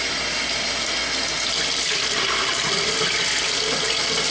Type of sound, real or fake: real